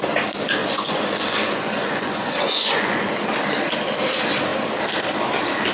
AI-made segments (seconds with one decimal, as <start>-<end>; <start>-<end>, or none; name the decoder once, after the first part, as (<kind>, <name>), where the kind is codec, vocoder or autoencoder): 0.6-3.1 (vocoder, Vocos)